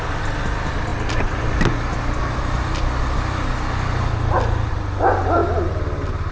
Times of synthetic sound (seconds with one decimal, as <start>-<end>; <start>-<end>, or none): none